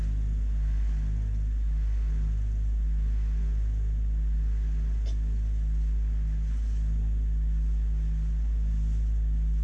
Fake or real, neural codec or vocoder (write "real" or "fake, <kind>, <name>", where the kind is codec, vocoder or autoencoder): real